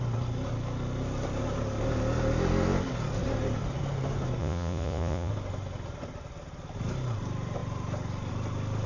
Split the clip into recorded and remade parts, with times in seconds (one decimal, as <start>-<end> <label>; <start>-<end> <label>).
0.0-4.4 recorded; 4.4-5.3 remade; 5.3-8.9 recorded